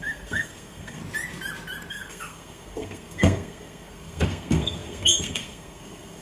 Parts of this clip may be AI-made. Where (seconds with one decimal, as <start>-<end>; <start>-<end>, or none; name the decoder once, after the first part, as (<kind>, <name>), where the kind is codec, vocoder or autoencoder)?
0.0-1.0 (codec, SNAC); 1.9-6.2